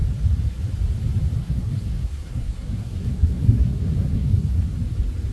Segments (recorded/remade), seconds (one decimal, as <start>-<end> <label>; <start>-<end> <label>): 0.0-1.4 recorded; 1.4-4.6 remade; 4.6-5.3 recorded